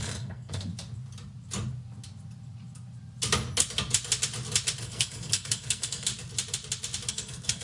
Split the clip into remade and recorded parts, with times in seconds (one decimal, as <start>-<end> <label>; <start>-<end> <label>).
0.0-0.7 remade; 0.7-4.8 recorded; 4.8-6.1 remade; 6.1-7.1 recorded; 7.1-7.6 remade